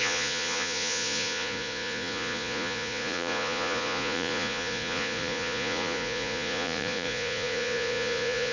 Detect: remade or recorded remade